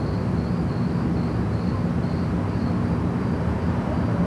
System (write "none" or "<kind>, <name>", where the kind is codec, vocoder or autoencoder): none